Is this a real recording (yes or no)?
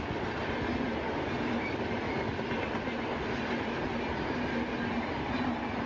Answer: yes